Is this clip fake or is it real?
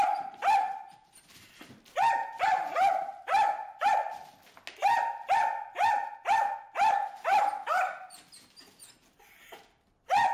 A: real